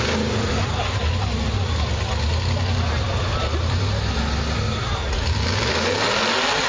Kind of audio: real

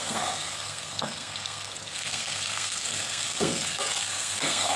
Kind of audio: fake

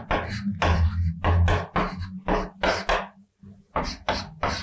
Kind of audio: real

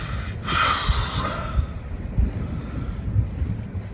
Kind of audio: real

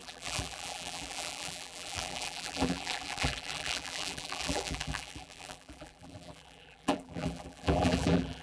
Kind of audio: fake